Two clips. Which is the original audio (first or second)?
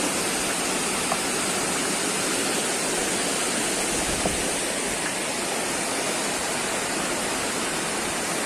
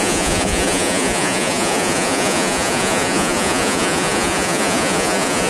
first